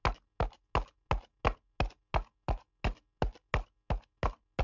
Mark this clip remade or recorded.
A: recorded